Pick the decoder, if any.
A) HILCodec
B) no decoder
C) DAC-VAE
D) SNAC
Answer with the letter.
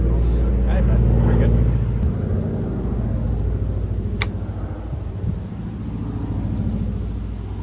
B